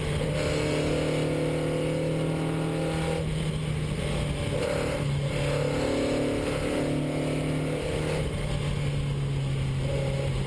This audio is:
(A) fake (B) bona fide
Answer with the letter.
B